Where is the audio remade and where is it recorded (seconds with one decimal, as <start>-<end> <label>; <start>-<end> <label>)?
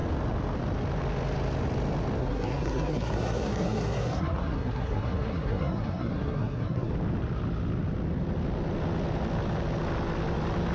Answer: 0.0-2.2 recorded; 2.2-6.9 remade; 6.9-10.7 recorded